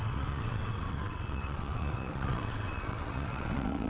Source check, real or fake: fake